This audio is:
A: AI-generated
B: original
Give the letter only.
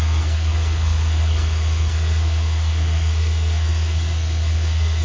A